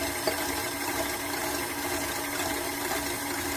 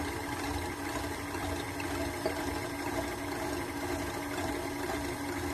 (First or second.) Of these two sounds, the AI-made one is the second